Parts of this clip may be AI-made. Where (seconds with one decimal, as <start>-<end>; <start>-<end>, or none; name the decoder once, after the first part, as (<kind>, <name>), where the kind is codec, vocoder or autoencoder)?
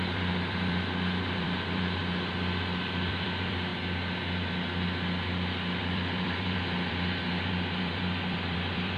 0.0-2.0 (vocoder, BigVGAN v2); 3.1-3.7; 5.8-9.0